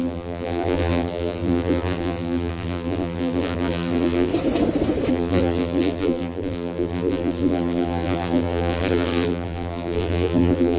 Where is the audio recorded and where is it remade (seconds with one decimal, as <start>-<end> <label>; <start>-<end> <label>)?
0.0-4.3 remade; 4.3-5.1 recorded; 5.1-10.8 remade